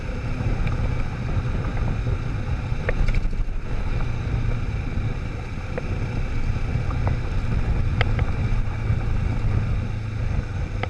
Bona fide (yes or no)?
yes